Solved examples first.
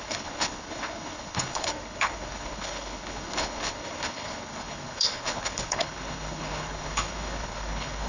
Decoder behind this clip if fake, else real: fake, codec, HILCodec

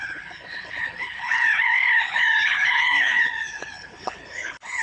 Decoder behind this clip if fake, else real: fake, codec, HILCodec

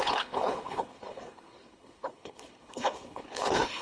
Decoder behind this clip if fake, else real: fake, codec, HILCodec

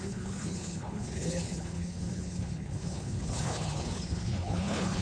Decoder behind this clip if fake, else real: fake, codec, HILCodec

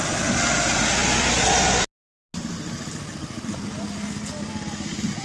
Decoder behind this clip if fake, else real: real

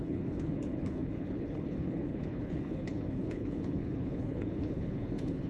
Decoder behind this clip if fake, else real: fake, codec, HILCodec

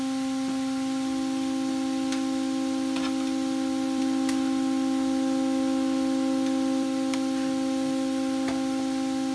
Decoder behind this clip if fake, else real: real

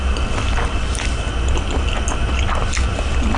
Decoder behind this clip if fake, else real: real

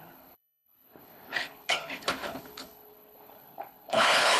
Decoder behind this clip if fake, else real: fake, codec, HILCodec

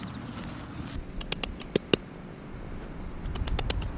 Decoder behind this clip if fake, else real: real